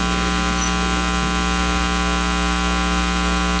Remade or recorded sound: recorded